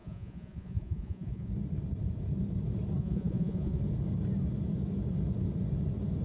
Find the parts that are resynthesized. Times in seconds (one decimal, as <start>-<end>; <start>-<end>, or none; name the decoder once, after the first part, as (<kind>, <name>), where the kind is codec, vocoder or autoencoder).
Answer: 0.0-1.5 (vocoder, Vocos); 3.0-3.8